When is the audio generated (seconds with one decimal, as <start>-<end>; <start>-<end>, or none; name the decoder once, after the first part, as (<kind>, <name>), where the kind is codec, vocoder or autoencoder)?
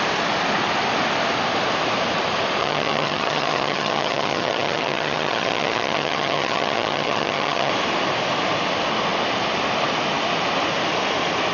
2.6-7.7 (vocoder, HiFi-GAN)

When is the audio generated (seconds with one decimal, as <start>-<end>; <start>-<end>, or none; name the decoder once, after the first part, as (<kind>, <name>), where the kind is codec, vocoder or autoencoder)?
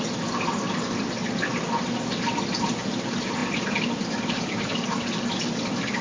none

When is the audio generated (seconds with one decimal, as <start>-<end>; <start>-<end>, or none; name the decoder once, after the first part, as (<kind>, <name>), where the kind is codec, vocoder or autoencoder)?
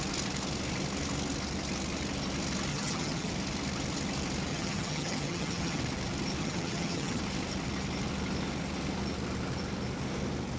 2.7-3.3 (vocoder, HiFi-GAN); 4.5-5.8; 6.4-7.2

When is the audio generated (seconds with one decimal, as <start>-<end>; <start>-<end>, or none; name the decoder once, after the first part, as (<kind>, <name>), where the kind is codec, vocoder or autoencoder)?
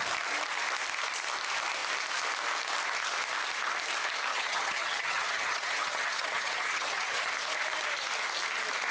4.3-7.3 (vocoder, HiFi-GAN)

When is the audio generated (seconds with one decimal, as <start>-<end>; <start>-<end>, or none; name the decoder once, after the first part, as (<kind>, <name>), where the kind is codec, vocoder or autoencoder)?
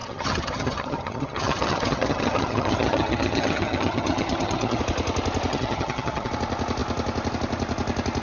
0.0-4.8 (vocoder, HiFi-GAN); 5.5-6.3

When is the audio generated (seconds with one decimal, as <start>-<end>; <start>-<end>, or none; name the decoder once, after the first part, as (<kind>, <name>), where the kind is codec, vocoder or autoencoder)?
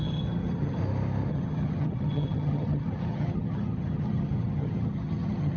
0.0-0.8 (vocoder, HiFi-GAN); 1.3-5.6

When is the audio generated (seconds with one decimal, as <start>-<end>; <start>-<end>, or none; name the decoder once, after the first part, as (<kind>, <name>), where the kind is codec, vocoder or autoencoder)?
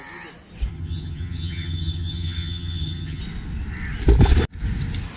0.7-3.2 (vocoder, HiFi-GAN)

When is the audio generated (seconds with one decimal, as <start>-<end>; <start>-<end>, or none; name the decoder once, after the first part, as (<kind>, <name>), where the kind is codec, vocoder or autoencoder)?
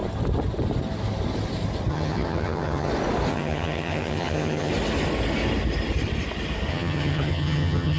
1.9-2.9 (vocoder, HiFi-GAN); 3.3-4.7; 6.7-8.0